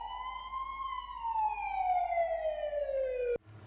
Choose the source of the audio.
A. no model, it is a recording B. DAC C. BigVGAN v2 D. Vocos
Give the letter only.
A